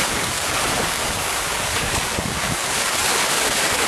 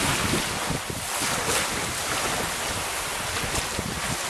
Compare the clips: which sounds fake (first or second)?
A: first